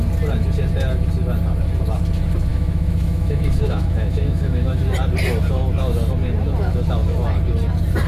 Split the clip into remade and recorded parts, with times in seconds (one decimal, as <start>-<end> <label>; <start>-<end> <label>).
0.0-2.5 recorded; 2.5-4.8 remade; 4.8-8.1 recorded